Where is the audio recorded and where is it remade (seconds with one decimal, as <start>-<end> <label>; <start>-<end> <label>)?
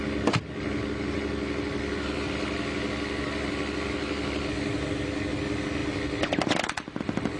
0.0-7.4 recorded